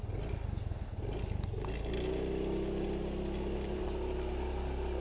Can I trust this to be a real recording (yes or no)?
yes